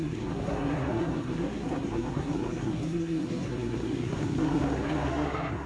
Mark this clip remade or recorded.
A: remade